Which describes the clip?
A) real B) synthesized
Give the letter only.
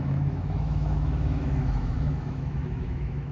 B